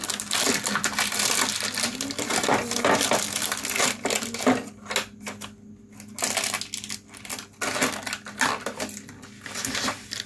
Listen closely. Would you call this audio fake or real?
real